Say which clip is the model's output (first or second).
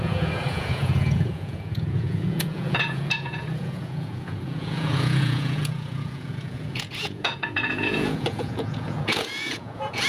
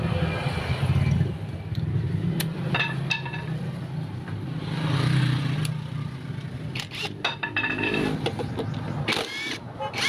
first